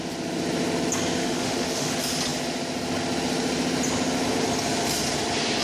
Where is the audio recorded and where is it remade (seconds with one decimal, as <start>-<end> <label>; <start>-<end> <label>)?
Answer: 0.0-1.2 recorded; 1.2-1.9 remade; 1.9-5.6 recorded